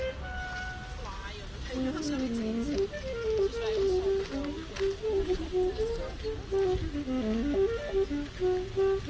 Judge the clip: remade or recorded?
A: recorded